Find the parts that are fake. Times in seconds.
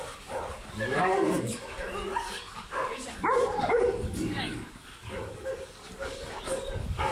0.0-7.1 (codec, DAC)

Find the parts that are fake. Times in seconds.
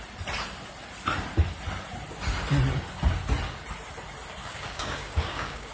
4.4-5.7 (codec, DAC)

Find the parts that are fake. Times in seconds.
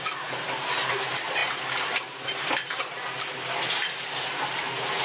none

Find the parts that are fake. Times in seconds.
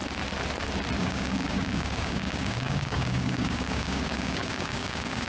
1.0-5.3 (codec, DAC)